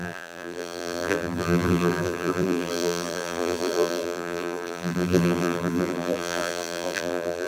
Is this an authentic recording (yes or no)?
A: no